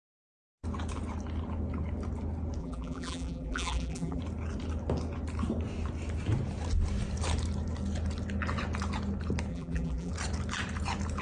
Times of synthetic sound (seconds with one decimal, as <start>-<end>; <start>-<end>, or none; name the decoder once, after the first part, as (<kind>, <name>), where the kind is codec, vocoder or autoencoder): 2.6-4.2 (vocoder, BigVGAN v2); 9.5-10.1